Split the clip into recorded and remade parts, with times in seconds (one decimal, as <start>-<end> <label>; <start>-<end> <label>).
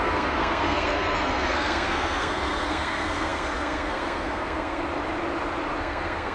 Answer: 0.0-4.8 remade; 4.8-5.8 recorded; 5.8-6.3 remade